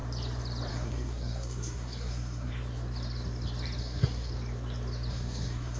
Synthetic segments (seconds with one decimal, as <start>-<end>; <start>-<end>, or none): 0.7-2.5; 3.8-4.3; 5.1-5.8